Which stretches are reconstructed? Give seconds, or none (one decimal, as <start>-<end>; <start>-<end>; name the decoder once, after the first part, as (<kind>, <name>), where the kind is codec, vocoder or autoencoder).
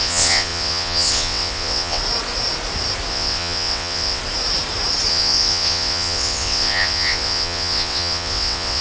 0.0-2.0 (vocoder, WaveNeXt); 3.1-4.2; 5.1-8.8